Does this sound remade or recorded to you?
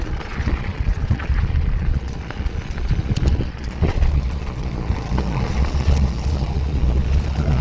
remade